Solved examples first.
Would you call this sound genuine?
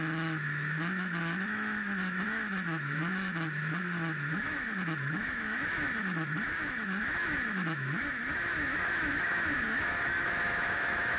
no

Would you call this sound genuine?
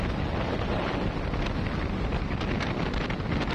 yes